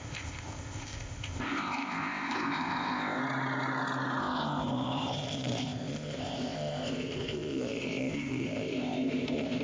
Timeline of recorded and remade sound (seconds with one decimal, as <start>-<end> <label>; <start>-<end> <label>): 0.0-3.2 remade; 3.2-4.2 recorded; 4.2-9.6 remade

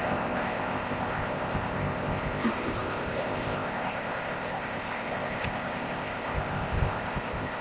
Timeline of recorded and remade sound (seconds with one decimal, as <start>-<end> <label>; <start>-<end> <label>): 0.0-7.6 remade

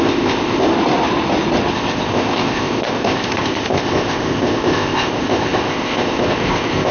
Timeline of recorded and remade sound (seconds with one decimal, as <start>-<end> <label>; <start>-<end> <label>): 0.0-0.7 remade; 0.7-1.7 recorded; 1.7-6.9 remade

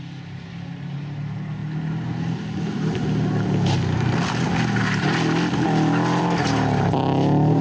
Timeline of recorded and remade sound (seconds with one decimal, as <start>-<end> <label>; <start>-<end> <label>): 0.0-7.6 recorded

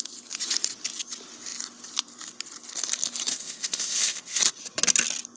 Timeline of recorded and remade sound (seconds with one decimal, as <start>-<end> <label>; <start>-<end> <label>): 0.0-3.3 recorded; 3.3-4.4 remade; 4.4-5.4 recorded